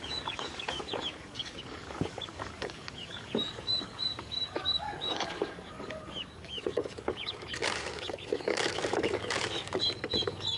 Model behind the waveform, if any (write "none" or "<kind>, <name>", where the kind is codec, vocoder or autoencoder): codec, DAC